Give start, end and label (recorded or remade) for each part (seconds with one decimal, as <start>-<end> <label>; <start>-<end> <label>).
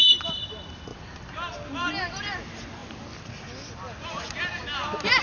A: 0.0-5.2 recorded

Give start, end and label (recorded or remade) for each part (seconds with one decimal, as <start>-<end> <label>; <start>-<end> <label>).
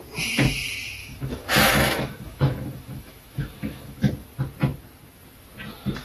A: 0.0-1.0 recorded; 1.0-4.1 remade; 4.1-6.0 recorded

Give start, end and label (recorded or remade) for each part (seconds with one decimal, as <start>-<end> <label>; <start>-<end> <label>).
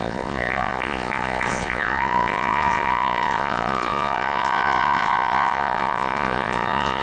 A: 0.0-7.0 remade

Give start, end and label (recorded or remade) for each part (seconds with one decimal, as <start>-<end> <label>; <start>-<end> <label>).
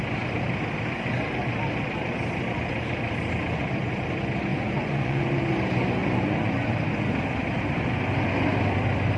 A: 0.0-4.5 recorded; 4.5-5.3 remade; 5.3-6.0 recorded; 6.0-6.7 remade; 6.7-9.2 recorded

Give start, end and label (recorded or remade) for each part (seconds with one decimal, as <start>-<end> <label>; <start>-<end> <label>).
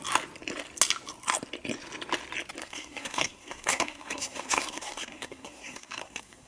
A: 0.0-2.6 recorded; 2.6-6.5 remade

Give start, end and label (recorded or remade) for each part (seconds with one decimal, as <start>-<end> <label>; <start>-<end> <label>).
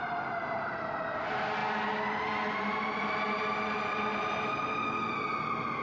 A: 0.0-5.8 recorded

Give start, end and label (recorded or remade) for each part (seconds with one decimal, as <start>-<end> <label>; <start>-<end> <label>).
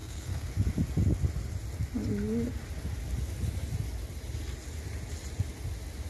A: 0.0-0.5 remade; 0.5-6.1 recorded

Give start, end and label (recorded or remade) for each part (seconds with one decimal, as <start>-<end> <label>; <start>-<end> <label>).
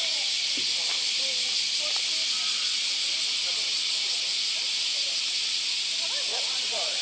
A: 0.0-6.3 recorded; 6.3-7.0 remade